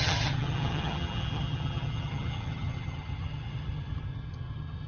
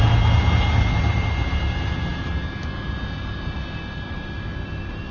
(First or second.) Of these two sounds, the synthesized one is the first